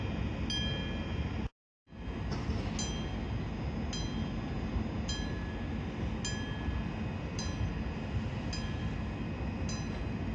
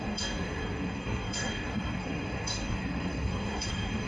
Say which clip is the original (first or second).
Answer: first